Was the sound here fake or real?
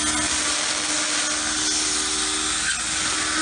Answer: real